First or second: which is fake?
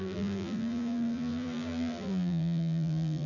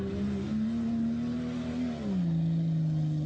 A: first